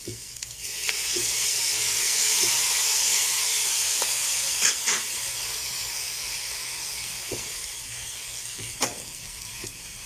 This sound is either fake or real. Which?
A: fake